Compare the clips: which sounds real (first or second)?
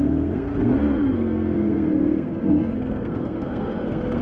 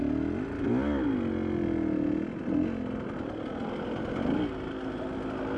second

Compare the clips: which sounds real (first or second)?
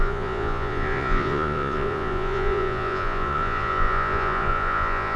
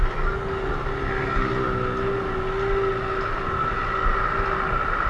second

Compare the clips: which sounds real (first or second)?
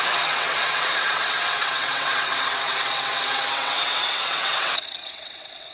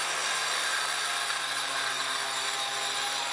second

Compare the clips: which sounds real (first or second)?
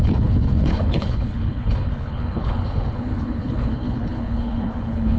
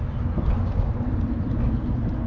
second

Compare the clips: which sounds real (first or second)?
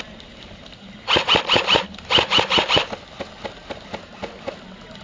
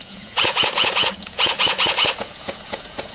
first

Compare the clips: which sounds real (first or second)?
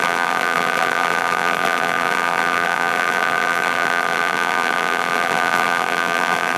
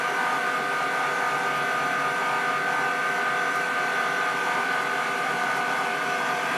second